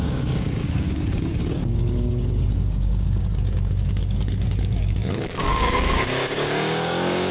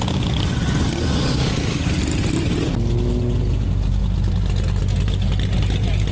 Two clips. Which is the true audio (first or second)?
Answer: second